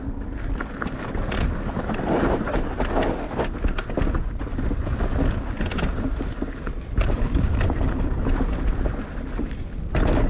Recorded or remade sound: recorded